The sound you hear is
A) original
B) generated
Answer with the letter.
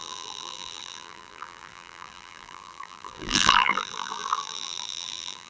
B